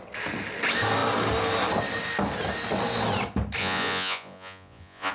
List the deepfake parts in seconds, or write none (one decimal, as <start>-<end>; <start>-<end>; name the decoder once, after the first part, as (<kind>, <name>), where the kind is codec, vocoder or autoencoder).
3.6-5.1 (vocoder, Vocos)